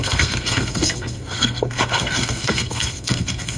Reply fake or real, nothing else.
fake